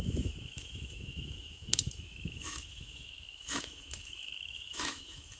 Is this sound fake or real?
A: fake